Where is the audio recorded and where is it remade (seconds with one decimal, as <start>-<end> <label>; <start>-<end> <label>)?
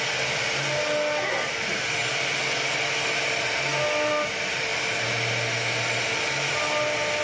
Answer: 0.0-7.2 recorded